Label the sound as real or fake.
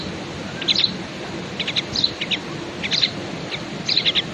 real